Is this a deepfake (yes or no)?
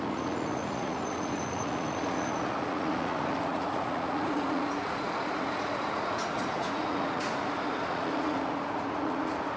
yes